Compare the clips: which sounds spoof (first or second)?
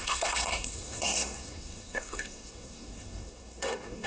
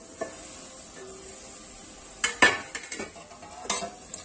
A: first